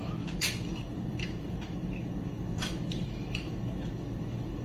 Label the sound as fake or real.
fake